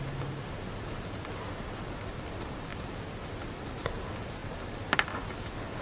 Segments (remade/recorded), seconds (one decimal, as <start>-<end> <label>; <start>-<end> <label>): 0.0-5.8 recorded